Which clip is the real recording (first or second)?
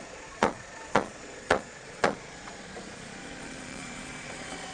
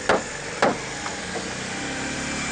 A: second